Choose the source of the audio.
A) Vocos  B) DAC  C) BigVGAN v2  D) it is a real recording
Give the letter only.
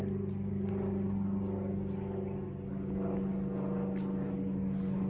D